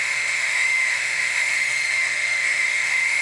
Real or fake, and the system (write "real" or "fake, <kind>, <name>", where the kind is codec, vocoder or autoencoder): fake, autoencoder, DAC-VAE